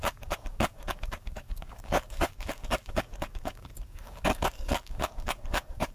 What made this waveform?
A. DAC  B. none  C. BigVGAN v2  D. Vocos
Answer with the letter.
A